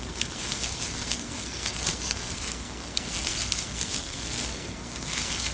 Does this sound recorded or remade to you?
remade